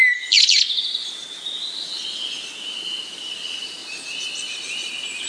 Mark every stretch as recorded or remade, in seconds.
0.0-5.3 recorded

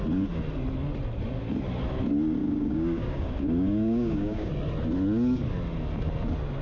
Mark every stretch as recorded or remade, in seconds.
0.0-2.4 recorded; 2.4-4.5 remade; 4.5-6.6 recorded

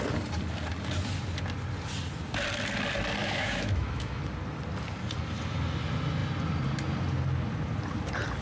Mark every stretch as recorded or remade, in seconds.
0.0-3.2 recorded; 3.2-4.2 remade; 4.2-8.4 recorded

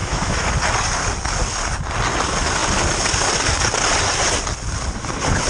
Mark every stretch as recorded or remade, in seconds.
0.0-0.5 remade; 0.5-5.5 recorded

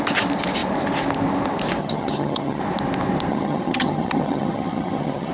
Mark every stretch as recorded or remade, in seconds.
0.0-1.8 recorded; 1.8-2.6 remade; 2.6-3.3 recorded; 3.3-5.3 remade